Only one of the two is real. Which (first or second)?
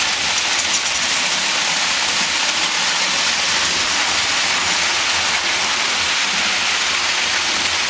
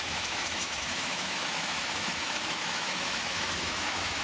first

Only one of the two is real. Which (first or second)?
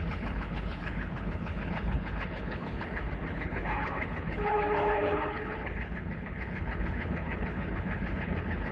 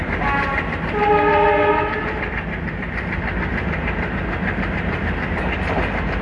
second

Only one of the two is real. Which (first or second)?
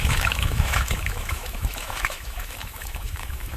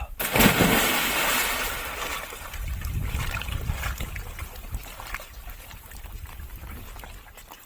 second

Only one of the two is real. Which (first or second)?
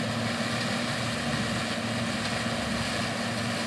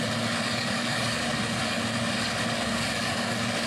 first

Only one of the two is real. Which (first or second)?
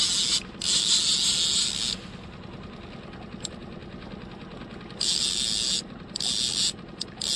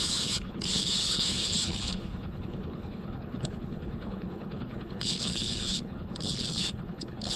first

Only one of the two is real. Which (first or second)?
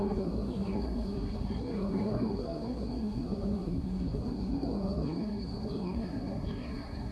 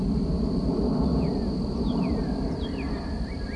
second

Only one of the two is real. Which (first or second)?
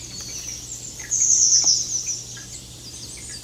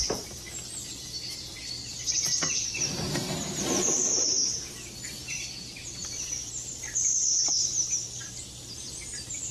first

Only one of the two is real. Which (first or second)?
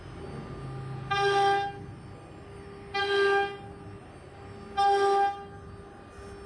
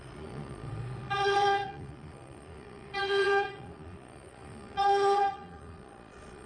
first